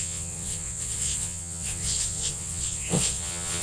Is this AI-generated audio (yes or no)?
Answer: yes